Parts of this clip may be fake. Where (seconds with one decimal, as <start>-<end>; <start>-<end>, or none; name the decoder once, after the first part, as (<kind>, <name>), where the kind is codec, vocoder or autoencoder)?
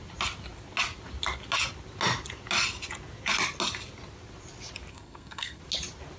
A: 4.9-5.6 (codec, SNAC)